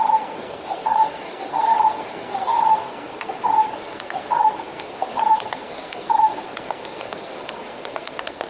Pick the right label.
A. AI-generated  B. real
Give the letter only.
A